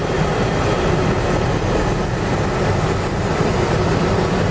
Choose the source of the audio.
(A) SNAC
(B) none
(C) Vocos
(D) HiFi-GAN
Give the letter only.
B